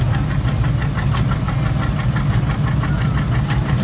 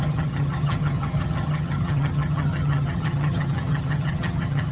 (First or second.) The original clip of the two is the first